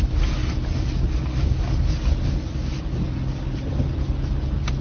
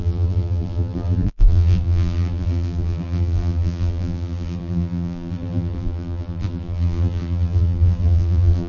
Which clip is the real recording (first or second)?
first